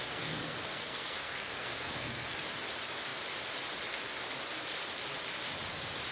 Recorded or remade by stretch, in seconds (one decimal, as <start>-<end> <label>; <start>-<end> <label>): 0.0-2.4 remade; 2.4-6.1 recorded